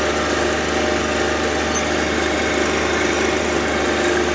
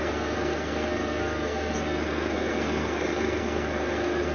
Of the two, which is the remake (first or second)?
second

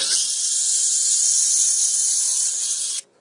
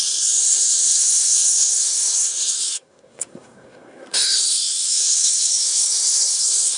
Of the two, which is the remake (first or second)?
second